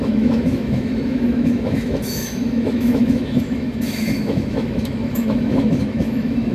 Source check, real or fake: fake